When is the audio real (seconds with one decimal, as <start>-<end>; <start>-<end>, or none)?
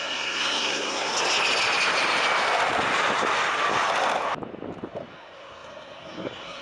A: 1.1-5.1